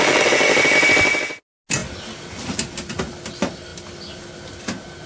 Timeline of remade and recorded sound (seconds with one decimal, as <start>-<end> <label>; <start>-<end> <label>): 0.0-5.1 recorded